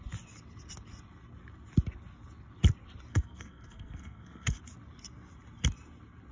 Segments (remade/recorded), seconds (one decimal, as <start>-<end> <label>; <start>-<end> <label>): 0.0-3.1 recorded; 3.1-4.6 remade; 4.6-6.3 recorded